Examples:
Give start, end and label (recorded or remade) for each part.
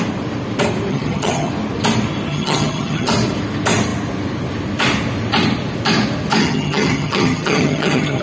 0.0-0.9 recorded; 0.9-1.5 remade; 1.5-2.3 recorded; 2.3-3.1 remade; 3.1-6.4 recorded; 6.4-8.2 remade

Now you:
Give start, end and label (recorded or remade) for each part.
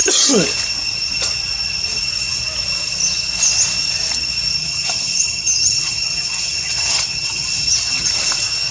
0.0-4.6 recorded; 4.6-8.1 remade; 8.1-8.7 recorded